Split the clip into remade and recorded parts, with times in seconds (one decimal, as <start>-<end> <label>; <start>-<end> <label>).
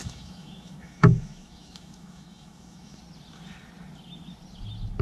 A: 0.0-3.0 remade; 3.0-5.0 recorded